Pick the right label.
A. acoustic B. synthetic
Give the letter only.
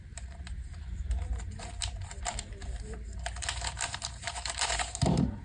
B